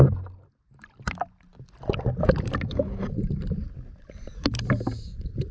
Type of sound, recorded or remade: recorded